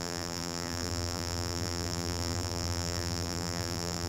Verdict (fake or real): fake